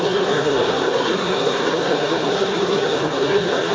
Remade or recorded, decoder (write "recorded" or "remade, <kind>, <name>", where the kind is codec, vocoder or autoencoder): remade, codec, SNAC